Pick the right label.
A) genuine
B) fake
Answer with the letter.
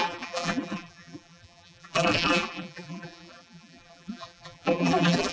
B